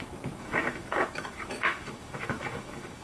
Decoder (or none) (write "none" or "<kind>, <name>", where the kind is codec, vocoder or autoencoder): autoencoder, DAC-VAE